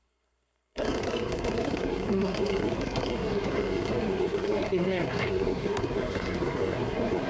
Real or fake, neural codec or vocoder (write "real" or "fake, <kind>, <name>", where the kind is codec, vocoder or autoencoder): fake, codec, SNAC